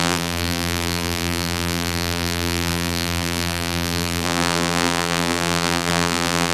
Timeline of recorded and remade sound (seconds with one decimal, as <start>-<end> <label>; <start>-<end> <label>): 0.0-6.5 remade